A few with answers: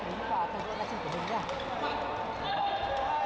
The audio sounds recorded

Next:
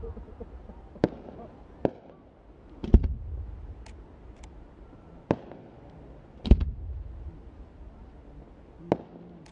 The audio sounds recorded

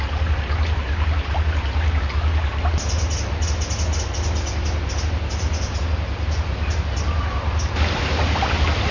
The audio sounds recorded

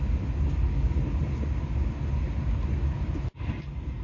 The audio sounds recorded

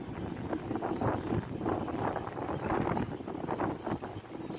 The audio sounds recorded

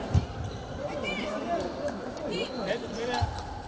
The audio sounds remade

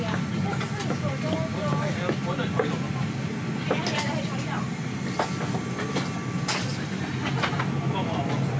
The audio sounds recorded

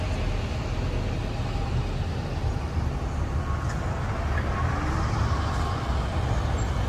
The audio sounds recorded